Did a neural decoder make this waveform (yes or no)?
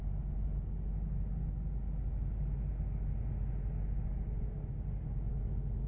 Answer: no